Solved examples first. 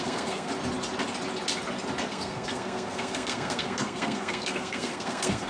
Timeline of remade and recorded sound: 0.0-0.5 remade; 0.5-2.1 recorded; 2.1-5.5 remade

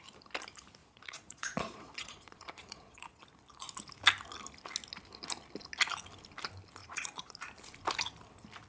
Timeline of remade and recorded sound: 0.0-0.8 recorded; 0.8-3.2 remade; 3.2-6.8 recorded; 6.8-7.3 remade; 7.3-8.7 recorded

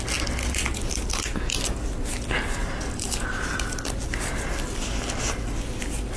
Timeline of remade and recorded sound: 0.0-2.6 recorded; 2.6-3.8 remade; 3.8-6.2 recorded

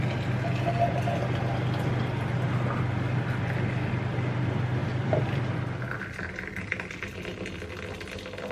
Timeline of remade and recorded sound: 0.0-4.8 recorded; 4.8-6.0 remade; 6.0-8.5 recorded

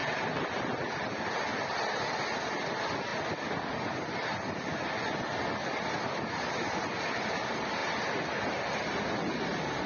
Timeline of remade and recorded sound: 0.0-9.9 recorded

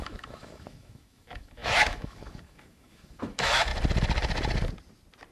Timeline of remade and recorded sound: 0.0-3.7 remade; 3.7-5.3 recorded

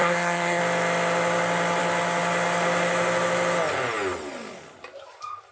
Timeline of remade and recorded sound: 0.0-0.6 remade; 0.6-5.5 recorded